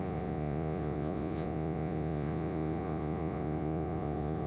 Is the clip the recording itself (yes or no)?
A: no